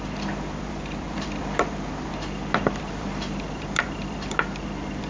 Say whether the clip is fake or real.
fake